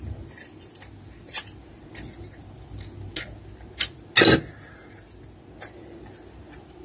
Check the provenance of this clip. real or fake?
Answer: real